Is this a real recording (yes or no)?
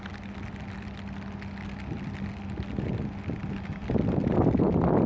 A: yes